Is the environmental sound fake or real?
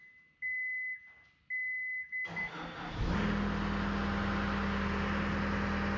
real